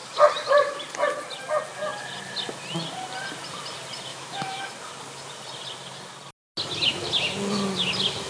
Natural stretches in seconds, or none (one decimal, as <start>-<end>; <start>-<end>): 0.0-4.1; 4.7-8.3